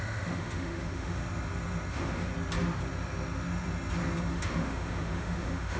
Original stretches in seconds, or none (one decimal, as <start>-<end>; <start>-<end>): 1.2-1.9; 2.3-4.3